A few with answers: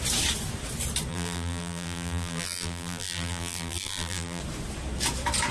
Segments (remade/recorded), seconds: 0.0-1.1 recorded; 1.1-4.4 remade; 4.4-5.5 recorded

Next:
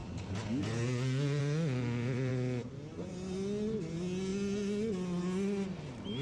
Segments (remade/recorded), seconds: 0.0-6.2 recorded

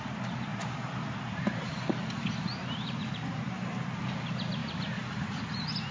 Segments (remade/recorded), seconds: 0.0-0.5 recorded; 0.5-1.7 remade; 1.7-3.0 recorded; 3.0-3.5 remade; 3.5-4.6 recorded; 4.6-5.4 remade; 5.4-5.9 recorded